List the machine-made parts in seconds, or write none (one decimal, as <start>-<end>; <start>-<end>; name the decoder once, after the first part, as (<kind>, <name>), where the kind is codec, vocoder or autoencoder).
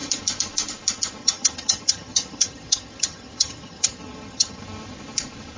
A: 1.2-4.6 (vocoder, HiFi-GAN)